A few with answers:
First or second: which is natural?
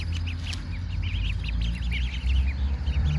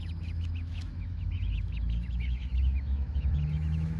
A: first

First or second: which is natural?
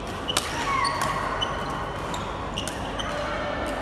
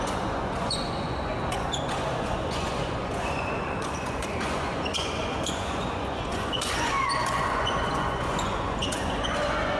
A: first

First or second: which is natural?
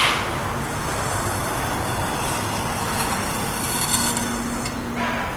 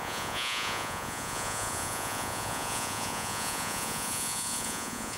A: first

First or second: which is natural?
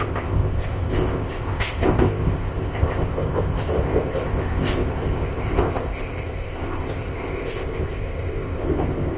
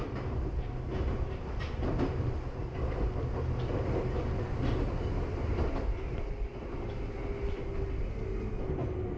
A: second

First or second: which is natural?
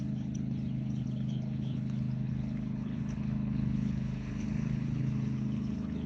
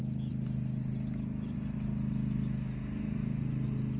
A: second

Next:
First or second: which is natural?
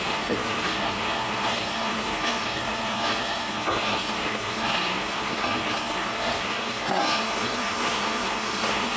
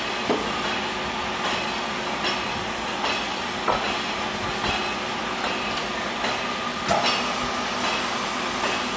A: second